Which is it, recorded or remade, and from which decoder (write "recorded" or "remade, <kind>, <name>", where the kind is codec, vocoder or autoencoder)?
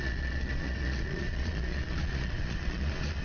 remade, vocoder, Vocos